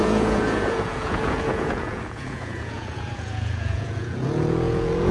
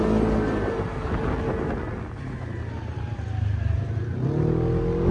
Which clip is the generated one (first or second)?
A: first